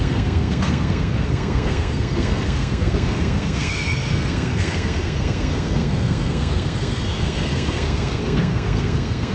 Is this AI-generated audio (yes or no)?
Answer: yes